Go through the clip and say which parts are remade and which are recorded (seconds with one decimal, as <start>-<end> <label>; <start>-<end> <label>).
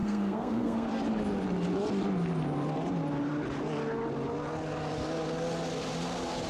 0.0-0.9 remade; 0.9-6.5 recorded